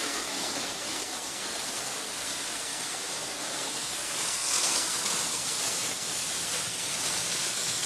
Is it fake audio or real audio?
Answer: fake